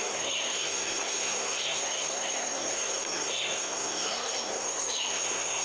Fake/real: fake